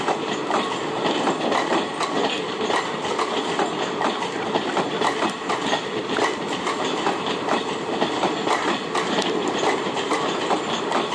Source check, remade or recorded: recorded